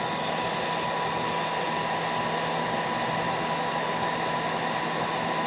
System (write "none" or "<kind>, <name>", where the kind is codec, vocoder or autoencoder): none